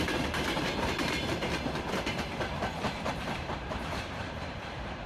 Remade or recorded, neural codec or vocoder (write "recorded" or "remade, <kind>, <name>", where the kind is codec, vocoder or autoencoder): remade, vocoder, BigVGAN v2